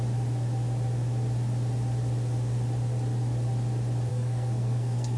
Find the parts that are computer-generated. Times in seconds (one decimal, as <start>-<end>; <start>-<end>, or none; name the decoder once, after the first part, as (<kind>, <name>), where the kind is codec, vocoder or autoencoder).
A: 4.1-5.2 (codec, SNAC)